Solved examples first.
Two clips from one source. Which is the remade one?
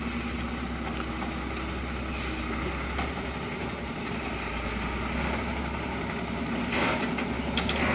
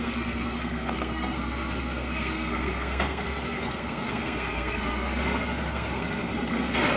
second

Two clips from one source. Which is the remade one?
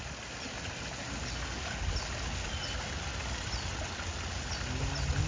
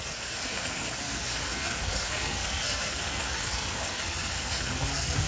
second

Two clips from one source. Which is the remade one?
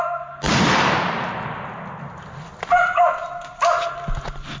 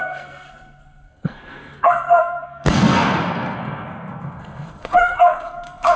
second